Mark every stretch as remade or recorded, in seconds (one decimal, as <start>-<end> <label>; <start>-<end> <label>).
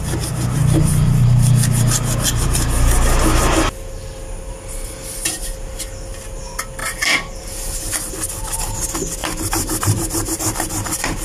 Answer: 0.0-6.8 recorded; 6.8-8.1 remade; 8.1-9.2 recorded; 9.2-11.2 remade